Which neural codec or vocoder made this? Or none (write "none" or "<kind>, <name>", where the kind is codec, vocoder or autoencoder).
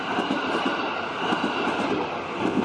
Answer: none